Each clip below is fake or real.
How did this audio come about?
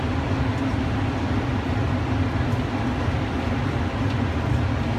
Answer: real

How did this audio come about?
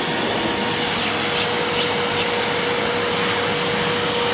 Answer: real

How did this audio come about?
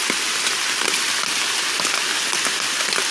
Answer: real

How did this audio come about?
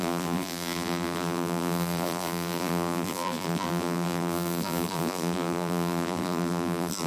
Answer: fake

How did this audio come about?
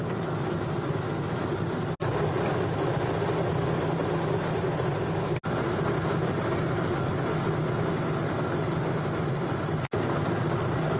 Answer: real